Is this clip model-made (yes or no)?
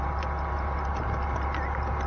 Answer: no